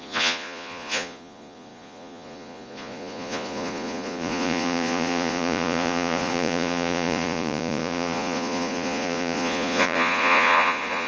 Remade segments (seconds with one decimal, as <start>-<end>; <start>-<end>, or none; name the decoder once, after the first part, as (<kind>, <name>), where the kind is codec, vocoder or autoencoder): 0.0-11.1 (vocoder, Vocos)